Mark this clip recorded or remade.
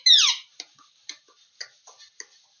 recorded